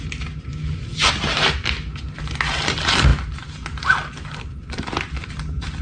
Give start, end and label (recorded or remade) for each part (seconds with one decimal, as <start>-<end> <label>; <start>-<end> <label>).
0.0-5.8 recorded